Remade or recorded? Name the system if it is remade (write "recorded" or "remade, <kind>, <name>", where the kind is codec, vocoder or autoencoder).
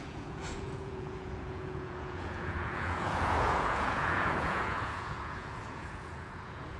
remade, vocoder, Vocos